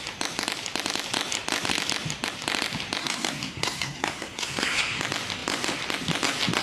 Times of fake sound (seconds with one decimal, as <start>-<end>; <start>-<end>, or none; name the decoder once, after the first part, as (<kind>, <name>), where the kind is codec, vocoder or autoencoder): 3.0-5.0 (codec, SNAC)